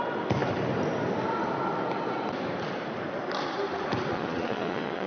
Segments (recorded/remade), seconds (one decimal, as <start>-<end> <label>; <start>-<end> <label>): 0.0-4.1 recorded; 4.1-5.1 remade